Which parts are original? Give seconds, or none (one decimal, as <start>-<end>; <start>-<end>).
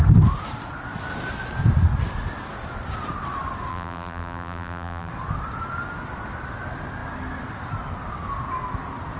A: 0.0-3.7; 5.1-9.2